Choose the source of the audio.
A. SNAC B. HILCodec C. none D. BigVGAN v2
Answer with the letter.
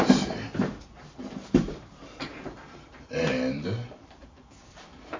D